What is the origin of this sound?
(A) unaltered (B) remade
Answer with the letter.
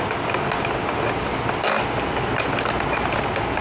A